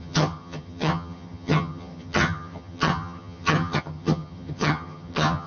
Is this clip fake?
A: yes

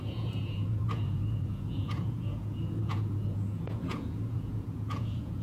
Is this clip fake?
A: yes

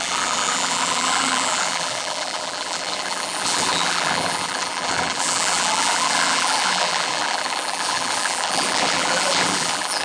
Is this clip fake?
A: yes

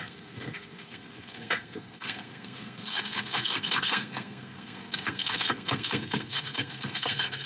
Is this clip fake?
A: yes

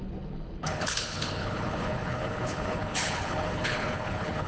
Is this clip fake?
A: yes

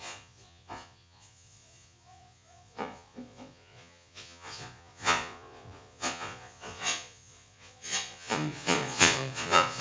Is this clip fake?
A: yes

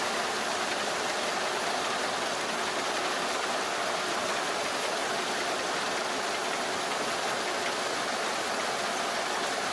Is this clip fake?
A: no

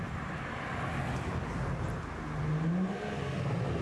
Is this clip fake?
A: no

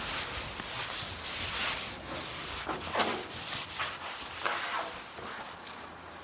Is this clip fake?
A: no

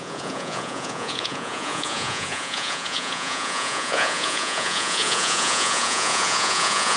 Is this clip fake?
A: yes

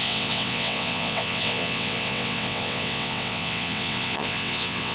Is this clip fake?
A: yes